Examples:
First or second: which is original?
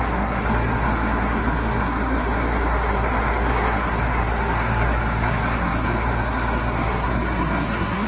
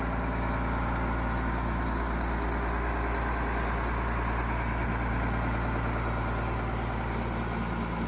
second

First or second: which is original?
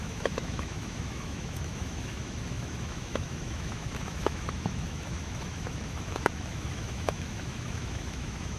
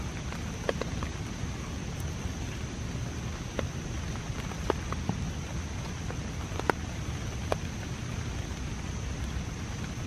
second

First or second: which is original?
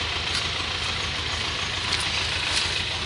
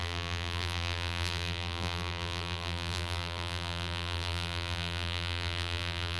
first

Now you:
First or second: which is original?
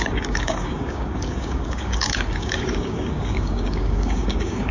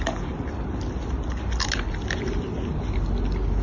second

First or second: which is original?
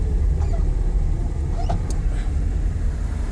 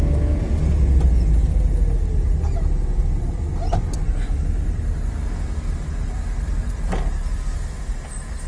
second